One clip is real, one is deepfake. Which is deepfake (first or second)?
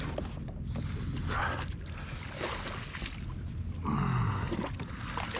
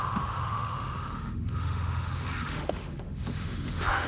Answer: second